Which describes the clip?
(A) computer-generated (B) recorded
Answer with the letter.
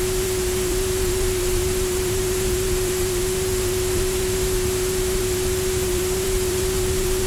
A